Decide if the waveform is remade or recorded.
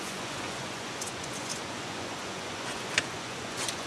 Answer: remade